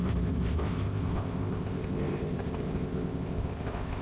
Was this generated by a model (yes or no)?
yes